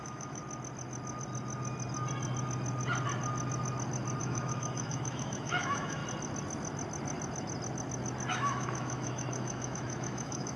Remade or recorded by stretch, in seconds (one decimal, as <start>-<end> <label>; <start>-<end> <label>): 0.0-0.4 remade; 0.4-4.2 recorded; 4.2-6.0 remade; 6.0-8.3 recorded; 8.3-10.6 remade